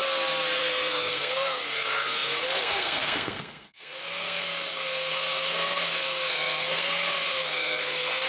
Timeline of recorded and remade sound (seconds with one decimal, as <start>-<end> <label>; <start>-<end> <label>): 0.0-0.6 recorded; 0.6-8.3 remade